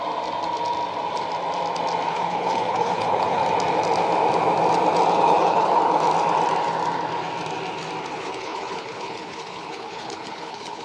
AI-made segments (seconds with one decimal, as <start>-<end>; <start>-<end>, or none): 2.1-3.4; 5.2-5.8; 8.1-10.8